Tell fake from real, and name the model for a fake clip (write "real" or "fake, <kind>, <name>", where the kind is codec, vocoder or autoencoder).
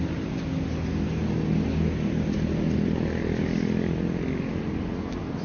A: real